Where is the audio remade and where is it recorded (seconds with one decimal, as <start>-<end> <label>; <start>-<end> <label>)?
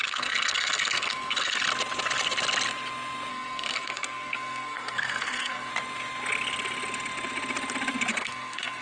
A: 0.0-1.6 remade; 1.6-3.3 recorded; 3.3-5.7 remade; 5.7-8.1 recorded; 8.1-8.8 remade